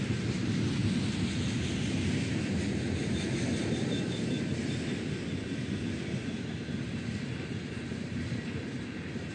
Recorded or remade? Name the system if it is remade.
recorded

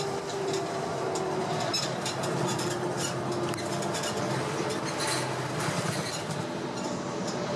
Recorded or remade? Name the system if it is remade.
remade, vocoder, BigVGAN v2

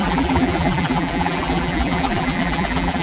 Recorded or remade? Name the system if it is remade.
remade, vocoder, BigVGAN v2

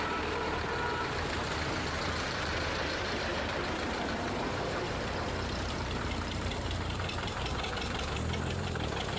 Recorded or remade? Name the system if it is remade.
remade, vocoder, BigVGAN v2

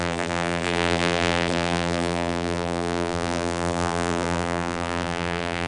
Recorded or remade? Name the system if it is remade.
remade, vocoder, BigVGAN v2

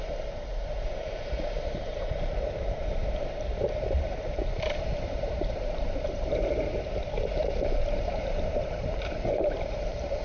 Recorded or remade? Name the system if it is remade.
remade, vocoder, BigVGAN v2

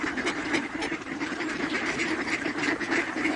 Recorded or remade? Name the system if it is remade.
remade, vocoder, BigVGAN v2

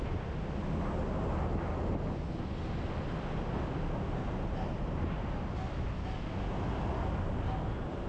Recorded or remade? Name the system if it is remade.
recorded